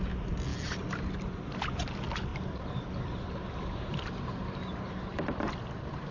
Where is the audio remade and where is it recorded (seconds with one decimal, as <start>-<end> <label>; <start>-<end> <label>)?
0.0-2.3 recorded; 2.3-3.0 remade; 3.0-3.9 recorded; 3.9-4.5 remade; 4.5-6.1 recorded